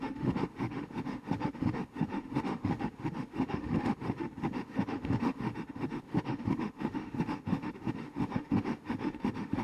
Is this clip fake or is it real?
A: fake